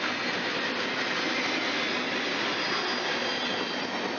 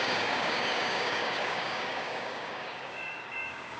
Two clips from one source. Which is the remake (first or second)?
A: second